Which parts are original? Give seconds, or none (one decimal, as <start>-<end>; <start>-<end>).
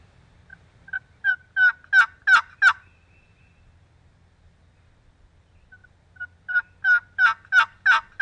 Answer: 0.0-8.2